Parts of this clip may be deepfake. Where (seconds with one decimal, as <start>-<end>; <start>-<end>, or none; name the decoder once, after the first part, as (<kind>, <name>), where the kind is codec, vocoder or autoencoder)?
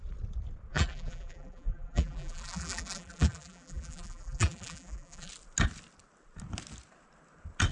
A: 0.7-5.3 (vocoder, BigVGAN v2)